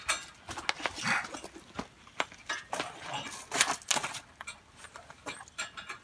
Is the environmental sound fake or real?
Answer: real